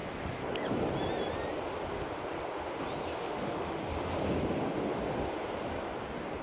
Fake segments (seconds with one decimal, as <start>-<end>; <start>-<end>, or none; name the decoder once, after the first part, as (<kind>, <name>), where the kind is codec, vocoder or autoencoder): 3.2-3.8 (autoencoder, DAC-VAE)